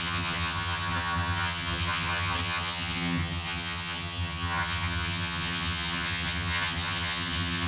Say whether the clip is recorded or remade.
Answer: remade